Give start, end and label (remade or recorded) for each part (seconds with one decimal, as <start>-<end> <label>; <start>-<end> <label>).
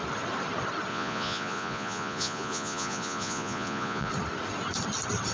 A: 0.0-0.9 recorded; 0.9-4.1 remade; 4.1-5.3 recorded